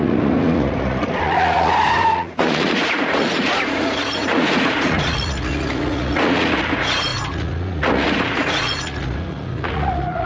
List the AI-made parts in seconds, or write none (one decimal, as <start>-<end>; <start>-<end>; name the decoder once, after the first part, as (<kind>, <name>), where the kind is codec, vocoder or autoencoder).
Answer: 0.0-10.3 (vocoder, Vocos)